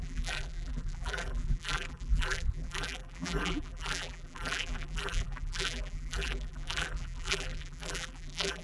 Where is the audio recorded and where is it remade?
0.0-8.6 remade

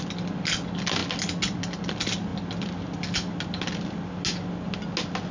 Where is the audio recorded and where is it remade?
0.0-5.3 recorded

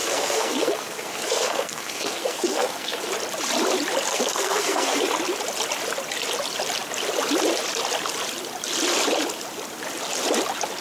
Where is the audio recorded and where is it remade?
0.0-3.1 remade; 3.1-4.1 recorded; 4.1-5.0 remade; 5.0-10.8 recorded

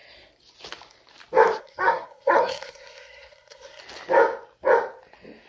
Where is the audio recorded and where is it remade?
0.0-1.6 recorded; 1.6-3.8 remade; 3.8-5.5 recorded

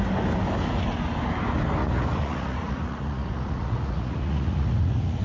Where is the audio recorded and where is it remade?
0.0-1.8 recorded; 1.8-5.2 remade

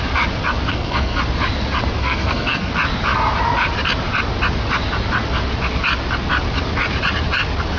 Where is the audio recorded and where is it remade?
0.0-0.7 recorded; 0.7-1.2 remade; 1.2-2.0 recorded; 2.0-2.7 remade; 2.7-7.8 recorded